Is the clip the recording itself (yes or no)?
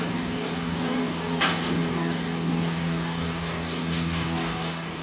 no